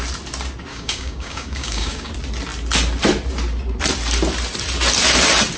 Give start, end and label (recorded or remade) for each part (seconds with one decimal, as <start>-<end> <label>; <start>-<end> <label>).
0.0-0.7 recorded; 0.7-2.1 remade; 2.1-5.6 recorded

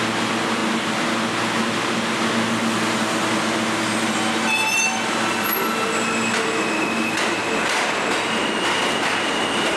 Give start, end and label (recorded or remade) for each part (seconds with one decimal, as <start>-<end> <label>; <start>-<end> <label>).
0.0-9.8 recorded